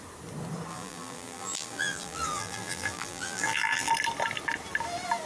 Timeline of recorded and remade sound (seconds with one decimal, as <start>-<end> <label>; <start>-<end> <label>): 0.0-0.7 recorded; 0.7-3.9 remade; 3.9-5.3 recorded